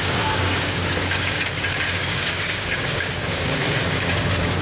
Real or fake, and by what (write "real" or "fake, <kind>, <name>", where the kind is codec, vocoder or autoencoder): fake, codec, DAC